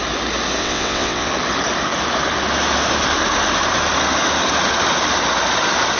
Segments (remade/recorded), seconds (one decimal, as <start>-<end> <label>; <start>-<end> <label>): 0.0-0.6 recorded; 0.6-1.3 remade; 1.3-6.0 recorded